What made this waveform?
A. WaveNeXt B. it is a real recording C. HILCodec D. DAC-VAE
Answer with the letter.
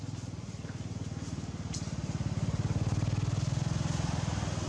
B